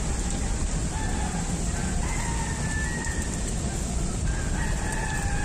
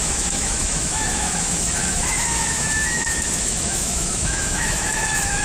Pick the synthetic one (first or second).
second